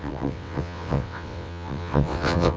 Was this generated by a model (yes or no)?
yes